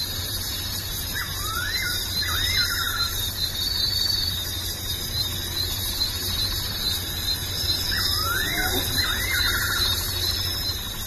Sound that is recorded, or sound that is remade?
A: remade